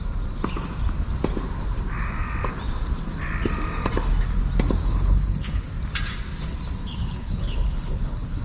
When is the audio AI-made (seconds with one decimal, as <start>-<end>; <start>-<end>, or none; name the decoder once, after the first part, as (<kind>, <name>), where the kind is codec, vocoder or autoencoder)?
4.8-5.6 (codec, HILCodec); 6.9-8.4